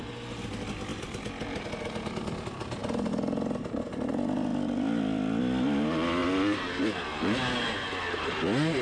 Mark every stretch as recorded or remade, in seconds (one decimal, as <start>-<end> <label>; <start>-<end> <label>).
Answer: 0.0-0.9 recorded; 0.9-1.8 remade; 1.8-4.5 recorded; 4.5-5.4 remade; 5.4-8.8 recorded